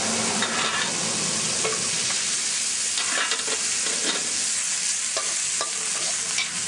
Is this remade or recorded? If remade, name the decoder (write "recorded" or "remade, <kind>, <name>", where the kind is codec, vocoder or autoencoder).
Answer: recorded